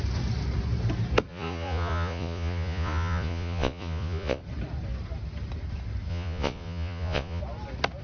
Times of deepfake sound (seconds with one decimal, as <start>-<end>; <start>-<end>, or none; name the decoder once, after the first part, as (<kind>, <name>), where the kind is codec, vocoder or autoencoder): 1.3-4.4 (vocoder, Vocos); 6.1-7.4